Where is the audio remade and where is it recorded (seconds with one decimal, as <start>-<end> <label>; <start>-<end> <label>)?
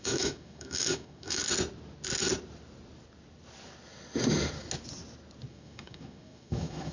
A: 0.0-1.4 remade; 1.4-5.5 recorded; 5.5-6.9 remade